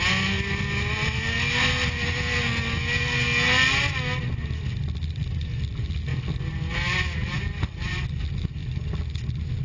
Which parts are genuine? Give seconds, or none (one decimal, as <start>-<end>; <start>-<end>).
0.0-9.6